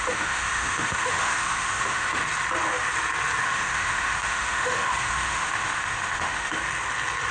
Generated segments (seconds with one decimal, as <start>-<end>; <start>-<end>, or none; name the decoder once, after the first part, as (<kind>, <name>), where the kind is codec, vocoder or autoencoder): 0.0-2.2 (autoencoder, DAC-VAE); 3.4-6.5